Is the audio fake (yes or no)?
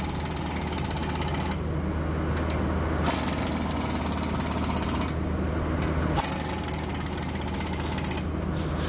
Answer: no